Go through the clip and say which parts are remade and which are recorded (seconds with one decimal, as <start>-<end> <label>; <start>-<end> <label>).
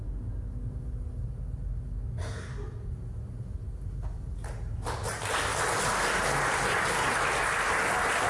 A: 0.0-8.3 recorded